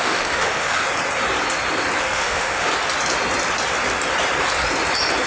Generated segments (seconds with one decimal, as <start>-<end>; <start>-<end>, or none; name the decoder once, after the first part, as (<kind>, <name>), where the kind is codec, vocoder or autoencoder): 0.0-0.8 (autoencoder, DAC-VAE); 2.0-2.7